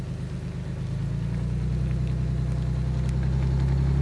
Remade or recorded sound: recorded